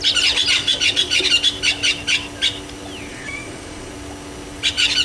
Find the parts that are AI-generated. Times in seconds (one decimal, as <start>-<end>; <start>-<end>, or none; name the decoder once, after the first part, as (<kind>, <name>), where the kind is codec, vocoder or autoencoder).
0.6-1.2 (vocoder, Vocos); 3.1-3.9